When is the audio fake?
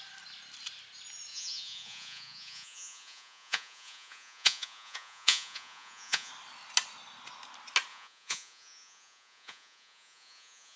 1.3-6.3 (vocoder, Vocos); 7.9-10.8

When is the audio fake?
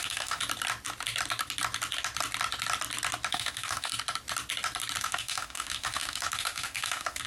0.0-0.4 (autoencoder, DAC-VAE); 3.3-3.9; 5.0-7.3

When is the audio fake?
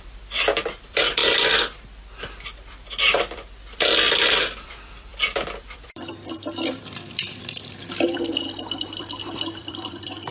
0.0-1.2 (vocoder, BigVGAN v2); 2.3-10.3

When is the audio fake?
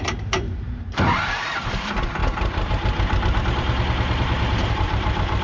0.0-5.4 (vocoder, BigVGAN v2)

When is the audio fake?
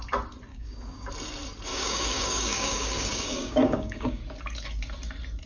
0.5-1.1 (codec, DAC); 1.7-4.2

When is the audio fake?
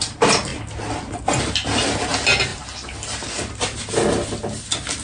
none